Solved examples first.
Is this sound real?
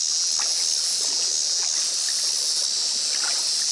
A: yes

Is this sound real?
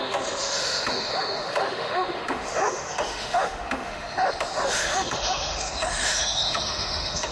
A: no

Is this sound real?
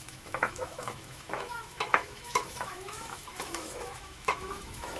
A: no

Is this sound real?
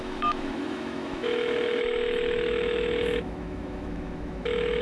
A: no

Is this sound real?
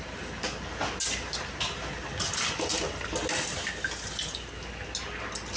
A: yes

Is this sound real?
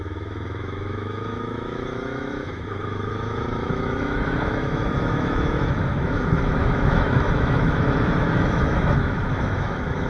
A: no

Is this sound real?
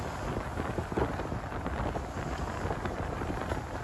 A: yes